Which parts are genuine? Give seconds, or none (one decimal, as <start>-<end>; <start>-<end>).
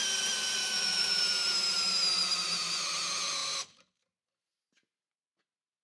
0.0-0.6; 1.2-5.8